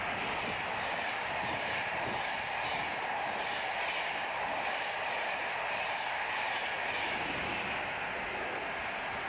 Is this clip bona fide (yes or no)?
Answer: yes